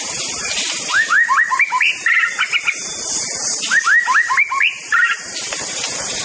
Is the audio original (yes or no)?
yes